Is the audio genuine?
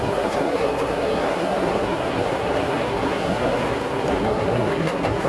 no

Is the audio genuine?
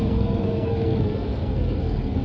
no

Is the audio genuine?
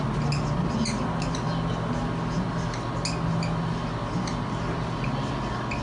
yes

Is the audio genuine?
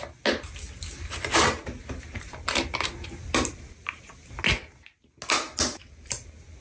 yes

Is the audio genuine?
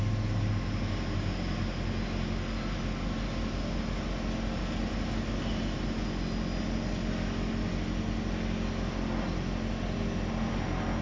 yes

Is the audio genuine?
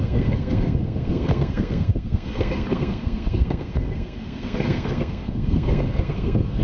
no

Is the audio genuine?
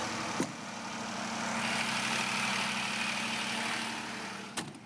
yes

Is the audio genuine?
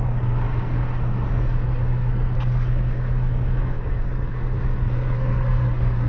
no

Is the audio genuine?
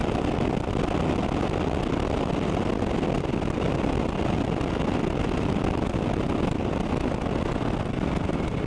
yes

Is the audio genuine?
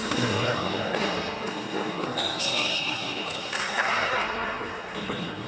no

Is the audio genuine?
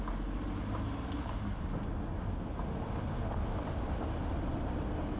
yes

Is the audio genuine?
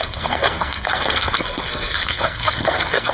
no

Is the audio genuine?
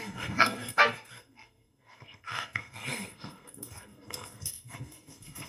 no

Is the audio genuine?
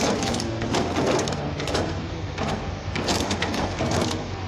no